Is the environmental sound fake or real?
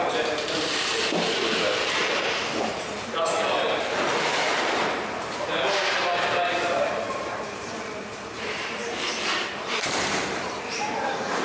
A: fake